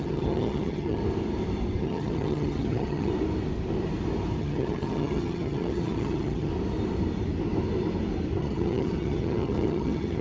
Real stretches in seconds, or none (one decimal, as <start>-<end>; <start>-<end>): 1.0-1.8; 3.1-4.4; 6.5-8.4